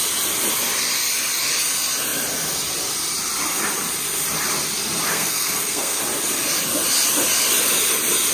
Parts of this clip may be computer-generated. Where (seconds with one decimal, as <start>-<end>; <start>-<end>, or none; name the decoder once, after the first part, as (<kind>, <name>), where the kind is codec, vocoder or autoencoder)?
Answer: 5.1-6.0 (codec, SNAC)